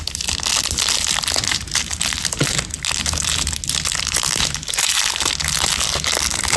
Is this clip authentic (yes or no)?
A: yes